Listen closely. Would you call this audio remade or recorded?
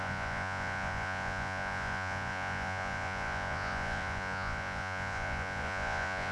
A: remade